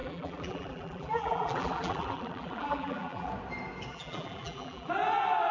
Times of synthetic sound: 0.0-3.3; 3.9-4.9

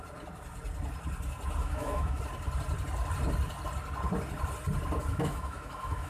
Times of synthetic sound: 1.6-2.2; 5.1-6.1

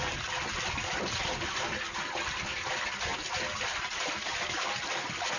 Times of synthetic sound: none

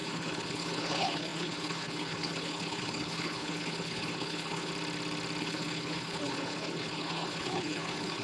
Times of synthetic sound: 0.0-4.7; 5.4-8.2